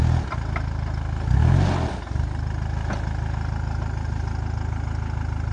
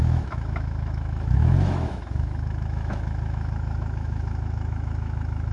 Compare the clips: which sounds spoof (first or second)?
second